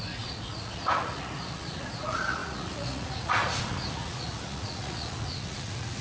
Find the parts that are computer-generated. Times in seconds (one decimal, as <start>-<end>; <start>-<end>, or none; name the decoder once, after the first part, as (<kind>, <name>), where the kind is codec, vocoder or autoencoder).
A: 0.0-6.0 (vocoder, Vocos)